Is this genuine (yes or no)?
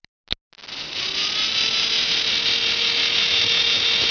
yes